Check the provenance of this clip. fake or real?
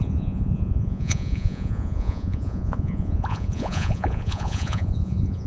fake